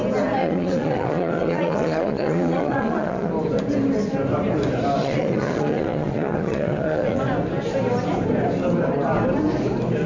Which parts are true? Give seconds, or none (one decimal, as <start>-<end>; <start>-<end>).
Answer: 0.0-0.4; 3.3-5.0; 7.2-10.1

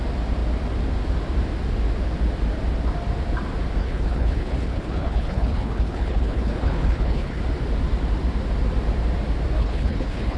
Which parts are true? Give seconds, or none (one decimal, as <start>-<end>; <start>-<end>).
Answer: 0.0-3.8; 7.4-9.6

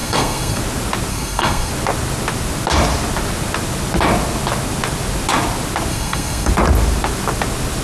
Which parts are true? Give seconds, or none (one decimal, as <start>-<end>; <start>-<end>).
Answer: 0.6-1.1; 1.7-5.9; 6.5-7.8

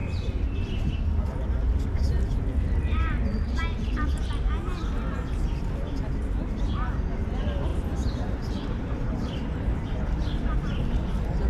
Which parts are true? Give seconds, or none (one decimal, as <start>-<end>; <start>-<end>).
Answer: 0.9-2.5; 4.2-7.7

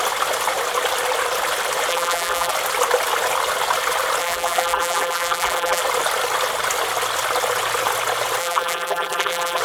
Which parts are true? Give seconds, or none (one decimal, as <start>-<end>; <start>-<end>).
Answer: 0.0-1.9; 2.5-4.2; 5.8-8.4

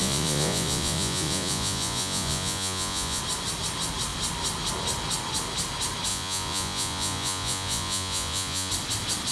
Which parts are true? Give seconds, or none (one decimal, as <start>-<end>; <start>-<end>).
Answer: 3.2-6.1; 8.7-9.3

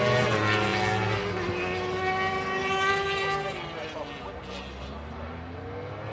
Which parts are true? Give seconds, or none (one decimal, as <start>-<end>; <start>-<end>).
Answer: 0.0-6.1

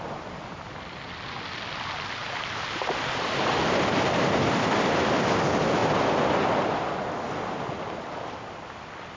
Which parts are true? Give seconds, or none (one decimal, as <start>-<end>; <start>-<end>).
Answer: 0.0-9.2